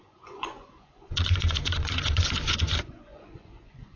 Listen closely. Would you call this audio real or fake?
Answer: fake